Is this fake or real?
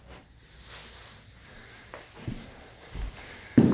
real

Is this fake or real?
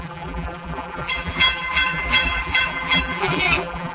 fake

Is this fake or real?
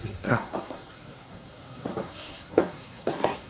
fake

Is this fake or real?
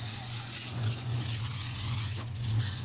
fake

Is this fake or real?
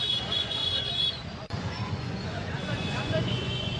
fake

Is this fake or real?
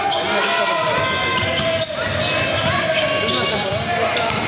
real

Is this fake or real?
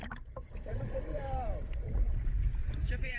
fake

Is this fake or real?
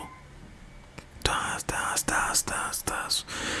real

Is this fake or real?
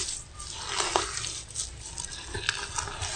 real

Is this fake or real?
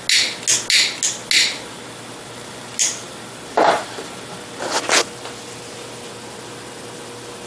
real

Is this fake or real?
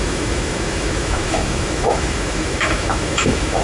fake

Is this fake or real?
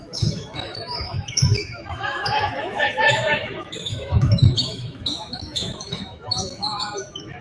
fake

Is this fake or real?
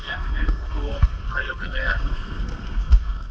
fake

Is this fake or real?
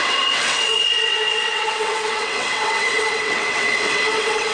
fake